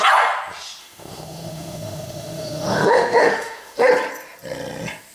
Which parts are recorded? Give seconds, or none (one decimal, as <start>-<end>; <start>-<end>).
0.0-0.8; 3.9-5.1